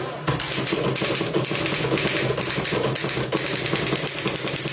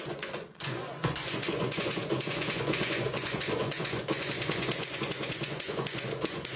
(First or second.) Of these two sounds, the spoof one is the second